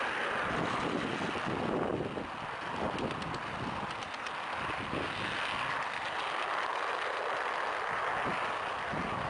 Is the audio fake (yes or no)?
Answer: no